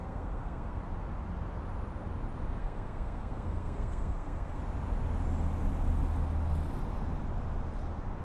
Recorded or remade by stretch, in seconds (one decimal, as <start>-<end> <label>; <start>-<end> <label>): 0.0-0.8 remade; 0.8-2.6 recorded; 2.6-4.6 remade; 4.6-8.2 recorded